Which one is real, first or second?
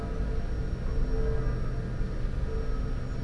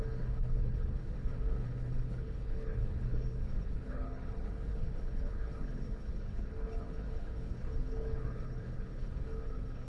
first